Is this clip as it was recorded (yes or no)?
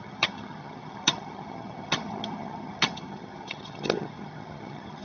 no